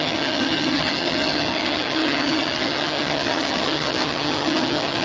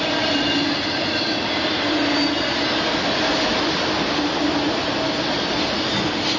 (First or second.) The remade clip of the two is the first